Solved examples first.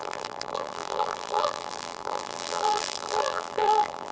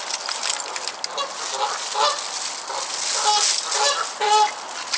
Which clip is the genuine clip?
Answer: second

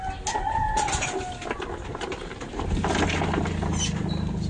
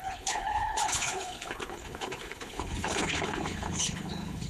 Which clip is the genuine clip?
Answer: first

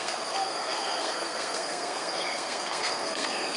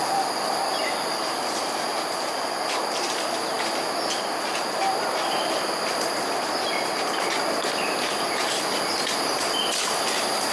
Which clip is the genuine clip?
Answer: second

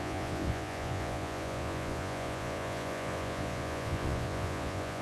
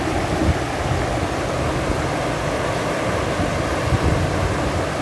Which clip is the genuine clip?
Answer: second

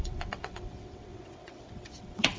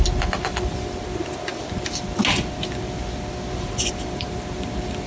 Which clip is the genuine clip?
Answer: second